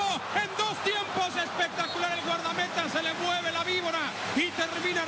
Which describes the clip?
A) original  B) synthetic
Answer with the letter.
A